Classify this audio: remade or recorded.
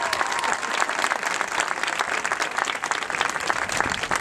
remade